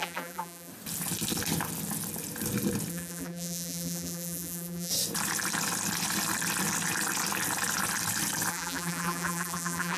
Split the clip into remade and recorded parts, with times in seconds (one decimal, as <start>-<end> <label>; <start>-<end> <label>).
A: 0.0-0.7 remade; 0.7-2.9 recorded; 2.9-4.9 remade; 4.9-8.5 recorded; 8.5-10.0 remade